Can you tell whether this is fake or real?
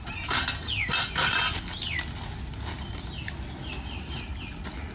real